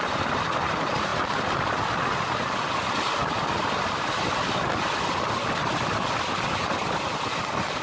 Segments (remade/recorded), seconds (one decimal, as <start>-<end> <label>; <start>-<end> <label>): 0.0-7.8 recorded